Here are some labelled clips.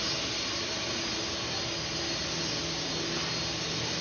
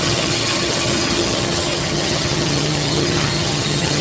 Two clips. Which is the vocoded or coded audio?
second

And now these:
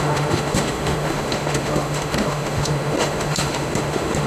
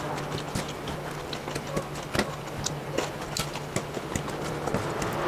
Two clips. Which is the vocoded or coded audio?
first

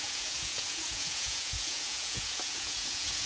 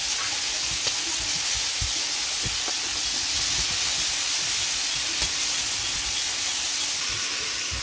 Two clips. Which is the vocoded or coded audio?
first